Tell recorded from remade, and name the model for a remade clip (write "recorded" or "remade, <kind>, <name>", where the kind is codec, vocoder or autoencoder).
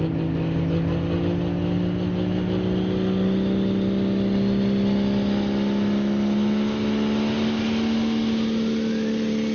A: recorded